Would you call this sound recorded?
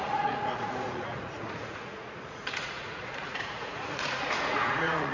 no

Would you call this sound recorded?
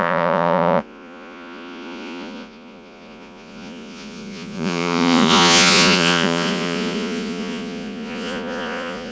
no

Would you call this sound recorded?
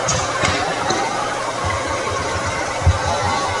yes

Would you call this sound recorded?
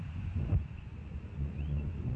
no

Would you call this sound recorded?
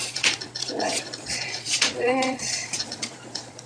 no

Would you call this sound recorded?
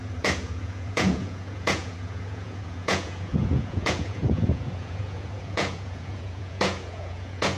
no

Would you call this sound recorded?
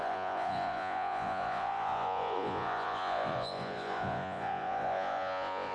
no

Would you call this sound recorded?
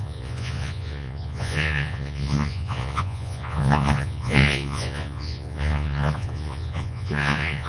no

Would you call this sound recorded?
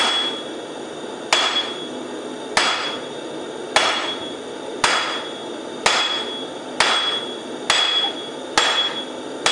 yes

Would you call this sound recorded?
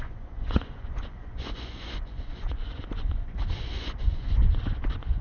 no